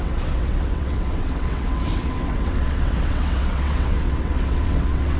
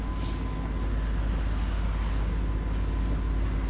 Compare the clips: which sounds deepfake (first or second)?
first